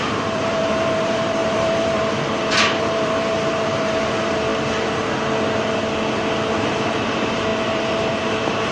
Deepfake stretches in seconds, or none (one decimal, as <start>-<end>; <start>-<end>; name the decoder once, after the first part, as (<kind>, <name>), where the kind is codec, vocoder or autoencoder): 0.0-4.5 (vocoder, BigVGAN v2); 6.6-8.7